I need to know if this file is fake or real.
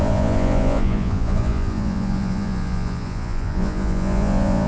fake